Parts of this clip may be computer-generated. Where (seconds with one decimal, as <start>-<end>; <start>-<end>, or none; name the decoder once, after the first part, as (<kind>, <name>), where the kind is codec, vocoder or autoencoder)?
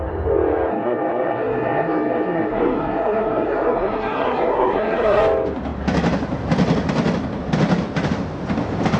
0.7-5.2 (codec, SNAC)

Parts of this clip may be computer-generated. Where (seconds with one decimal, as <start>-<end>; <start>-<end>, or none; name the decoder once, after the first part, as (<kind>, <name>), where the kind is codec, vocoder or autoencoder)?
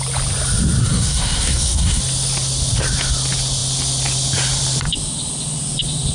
0.8-2.0 (codec, SNAC)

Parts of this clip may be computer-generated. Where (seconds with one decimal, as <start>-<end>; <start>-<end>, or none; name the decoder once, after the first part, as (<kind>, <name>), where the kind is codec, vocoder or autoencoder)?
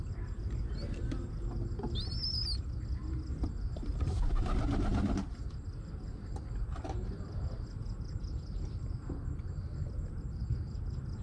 none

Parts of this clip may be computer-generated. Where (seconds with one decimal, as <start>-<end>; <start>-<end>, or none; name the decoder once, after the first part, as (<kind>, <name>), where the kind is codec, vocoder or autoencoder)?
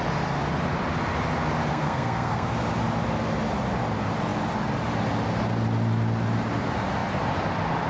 1.7-2.5 (codec, SNAC)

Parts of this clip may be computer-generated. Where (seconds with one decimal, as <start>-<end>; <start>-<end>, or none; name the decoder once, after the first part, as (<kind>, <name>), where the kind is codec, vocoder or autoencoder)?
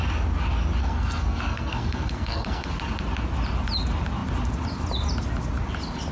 0.8-2.7 (codec, SNAC)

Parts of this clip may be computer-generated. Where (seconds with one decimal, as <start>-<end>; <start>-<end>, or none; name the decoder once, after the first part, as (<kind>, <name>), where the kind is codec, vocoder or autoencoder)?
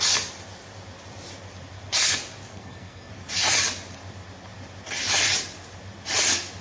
2.5-3.1 (codec, SNAC)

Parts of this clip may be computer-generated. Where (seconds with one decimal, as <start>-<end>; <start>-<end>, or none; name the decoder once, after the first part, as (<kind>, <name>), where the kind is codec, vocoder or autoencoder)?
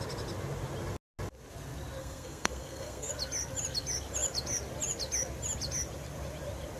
2.0-3.1 (codec, SNAC)